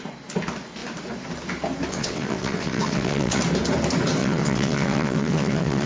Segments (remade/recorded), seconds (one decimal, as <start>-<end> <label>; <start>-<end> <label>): 0.0-1.9 recorded; 1.9-3.4 remade; 3.4-4.2 recorded; 4.2-5.9 remade